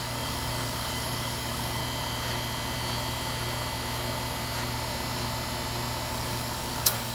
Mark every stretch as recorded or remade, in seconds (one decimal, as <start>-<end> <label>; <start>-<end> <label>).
0.0-1.8 remade; 1.8-6.1 recorded; 6.1-7.1 remade